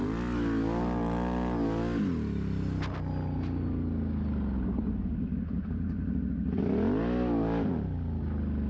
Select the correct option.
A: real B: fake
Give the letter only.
A